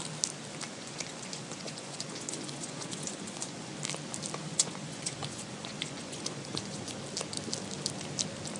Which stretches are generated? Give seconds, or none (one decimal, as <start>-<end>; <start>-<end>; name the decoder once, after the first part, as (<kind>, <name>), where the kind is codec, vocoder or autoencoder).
0.7-3.7 (vocoder, Vocos); 4.4-7.0